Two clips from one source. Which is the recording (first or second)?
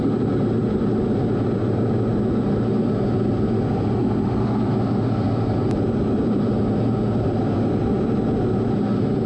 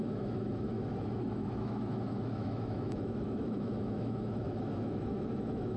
first